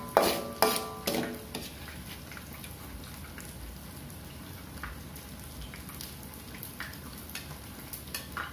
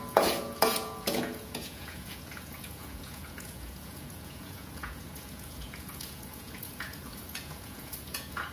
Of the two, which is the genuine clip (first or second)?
first